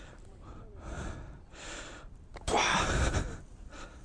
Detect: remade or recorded recorded